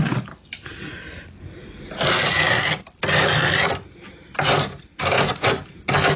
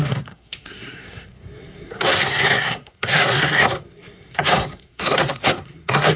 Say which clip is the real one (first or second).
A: first